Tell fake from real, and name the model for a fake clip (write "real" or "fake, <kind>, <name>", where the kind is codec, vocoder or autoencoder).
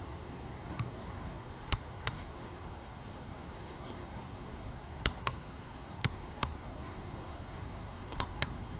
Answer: fake, codec, SNAC